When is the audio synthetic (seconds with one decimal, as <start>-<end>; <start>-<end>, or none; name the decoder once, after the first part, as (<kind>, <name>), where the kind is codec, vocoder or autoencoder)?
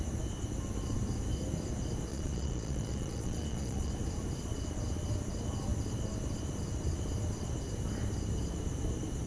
2.1-3.9 (vocoder, Vocos)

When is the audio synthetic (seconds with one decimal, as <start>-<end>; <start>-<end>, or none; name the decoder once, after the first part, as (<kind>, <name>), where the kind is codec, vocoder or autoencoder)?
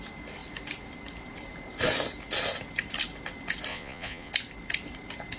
3.7-4.3 (vocoder, Vocos)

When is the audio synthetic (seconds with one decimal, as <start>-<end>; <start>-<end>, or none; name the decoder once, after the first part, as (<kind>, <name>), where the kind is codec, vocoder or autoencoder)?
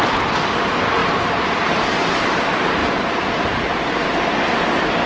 none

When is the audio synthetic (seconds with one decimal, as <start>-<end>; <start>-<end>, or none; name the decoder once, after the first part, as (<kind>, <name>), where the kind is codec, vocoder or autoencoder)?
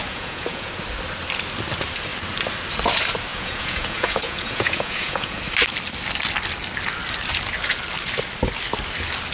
0.0-0.7 (vocoder, Vocos); 3.3-5.4